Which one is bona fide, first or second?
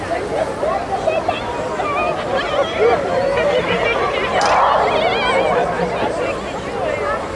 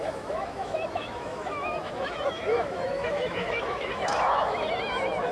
first